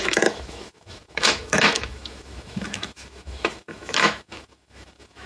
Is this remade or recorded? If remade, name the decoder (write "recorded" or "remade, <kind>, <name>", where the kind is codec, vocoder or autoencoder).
remade, autoencoder, DAC-VAE